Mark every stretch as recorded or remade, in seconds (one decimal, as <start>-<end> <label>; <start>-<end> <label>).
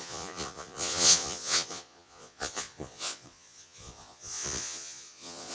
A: 0.0-5.5 remade